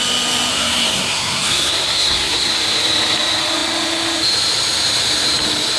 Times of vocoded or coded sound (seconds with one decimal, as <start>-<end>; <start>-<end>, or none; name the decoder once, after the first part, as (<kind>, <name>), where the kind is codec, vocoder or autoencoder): 0.5-2.5 (codec, SNAC)